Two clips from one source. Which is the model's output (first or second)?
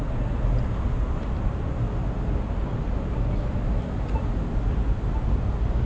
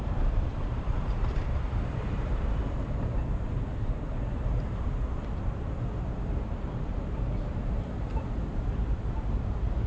second